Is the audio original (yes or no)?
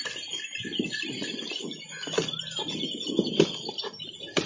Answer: yes